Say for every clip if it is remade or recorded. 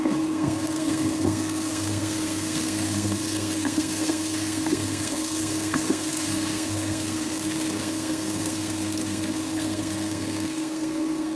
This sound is remade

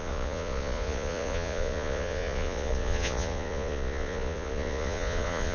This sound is remade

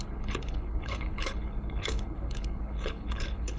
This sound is remade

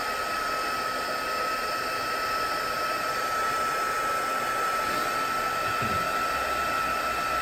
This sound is recorded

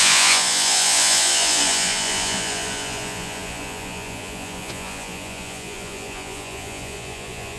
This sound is remade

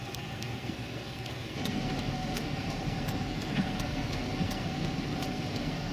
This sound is remade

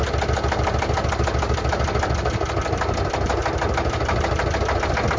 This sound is recorded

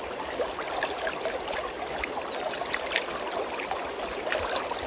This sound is recorded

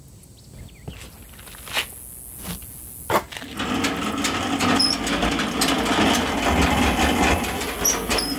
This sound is recorded